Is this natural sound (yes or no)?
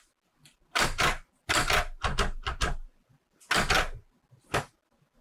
yes